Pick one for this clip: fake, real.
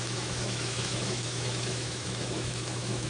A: fake